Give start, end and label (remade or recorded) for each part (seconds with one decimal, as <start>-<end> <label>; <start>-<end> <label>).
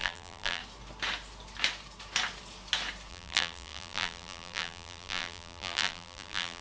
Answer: 0.0-0.6 remade; 0.6-3.1 recorded; 3.1-6.6 remade